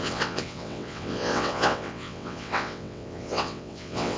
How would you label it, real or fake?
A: fake